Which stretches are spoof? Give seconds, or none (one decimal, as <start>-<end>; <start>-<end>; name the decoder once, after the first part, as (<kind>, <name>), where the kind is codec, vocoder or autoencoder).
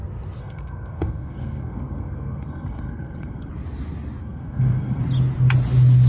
0.4-3.5 (codec, SNAC); 4.2-5.0